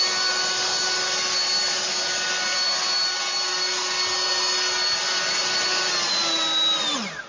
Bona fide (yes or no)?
yes